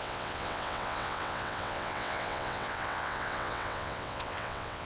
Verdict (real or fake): fake